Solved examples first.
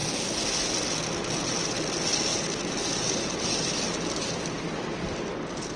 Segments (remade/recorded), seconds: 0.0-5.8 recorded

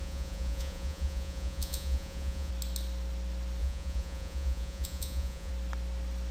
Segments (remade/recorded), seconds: 0.0-2.5 remade; 2.5-3.6 recorded; 3.6-5.5 remade; 5.5-6.3 recorded

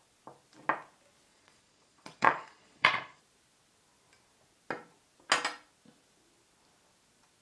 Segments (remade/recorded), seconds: 0.0-1.3 recorded; 1.3-3.2 remade; 3.2-7.4 recorded

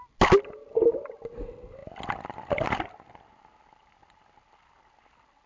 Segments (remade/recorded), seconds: 0.0-5.5 recorded

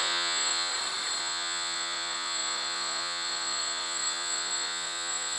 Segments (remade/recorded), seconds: 0.0-0.7 remade; 0.7-1.2 recorded; 1.2-5.4 remade

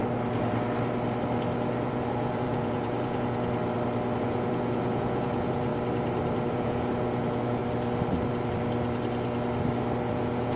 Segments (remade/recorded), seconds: 0.0-1.7 recorded; 1.7-3.6 remade; 3.6-4.2 recorded; 4.2-5.7 remade; 5.7-6.5 recorded; 6.5-7.6 remade; 7.6-10.1 recorded; 10.1-10.6 remade

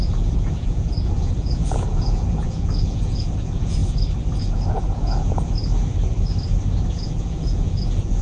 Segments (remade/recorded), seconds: 0.0-3.8 remade; 3.8-4.4 recorded; 4.4-5.6 remade; 5.6-6.9 recorded; 6.9-8.2 remade